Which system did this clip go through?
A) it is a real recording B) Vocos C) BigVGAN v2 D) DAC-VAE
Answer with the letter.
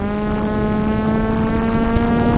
A